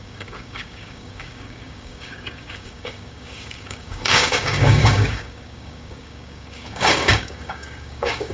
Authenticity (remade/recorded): remade